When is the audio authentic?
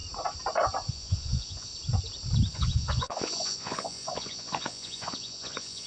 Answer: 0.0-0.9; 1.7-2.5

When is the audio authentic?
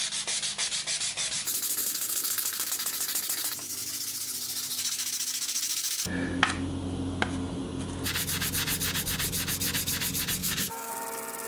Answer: 0.0-1.8; 2.7-10.4; 10.9-11.5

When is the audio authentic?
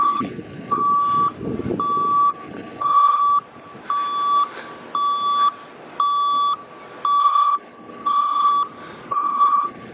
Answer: 0.8-2.3; 3.2-7.2; 8.5-9.1